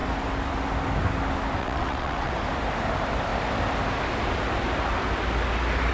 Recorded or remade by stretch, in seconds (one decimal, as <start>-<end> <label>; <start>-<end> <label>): 0.0-1.6 recorded; 1.6-2.3 remade; 2.3-5.9 recorded